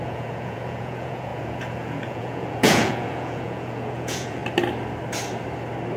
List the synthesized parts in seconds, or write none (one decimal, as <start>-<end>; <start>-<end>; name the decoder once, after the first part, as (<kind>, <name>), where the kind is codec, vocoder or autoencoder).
0.0-4.4 (vocoder, Vocos)